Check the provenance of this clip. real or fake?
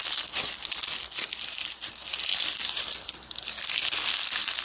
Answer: real